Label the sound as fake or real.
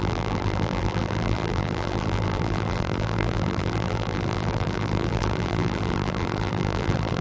fake